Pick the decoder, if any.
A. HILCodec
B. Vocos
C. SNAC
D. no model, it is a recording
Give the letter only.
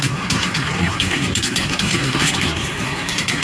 C